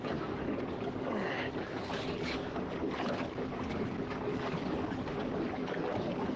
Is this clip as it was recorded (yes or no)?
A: no